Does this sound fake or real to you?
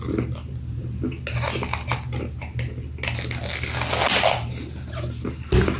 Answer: real